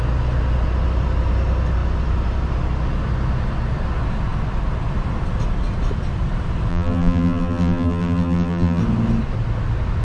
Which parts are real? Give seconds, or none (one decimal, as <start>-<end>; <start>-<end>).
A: 0.0-6.7; 8.8-10.0